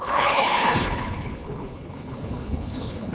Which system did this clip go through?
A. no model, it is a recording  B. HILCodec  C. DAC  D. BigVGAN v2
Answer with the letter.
B